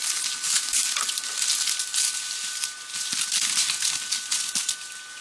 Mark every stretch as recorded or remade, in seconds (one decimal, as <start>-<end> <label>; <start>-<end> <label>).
0.0-5.2 recorded